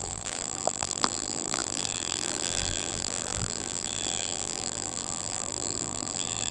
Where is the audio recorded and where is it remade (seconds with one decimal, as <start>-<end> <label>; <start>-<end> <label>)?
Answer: 0.0-6.5 remade